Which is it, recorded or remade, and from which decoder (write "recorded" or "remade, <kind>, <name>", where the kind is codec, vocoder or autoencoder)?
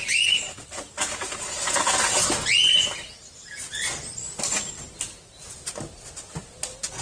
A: recorded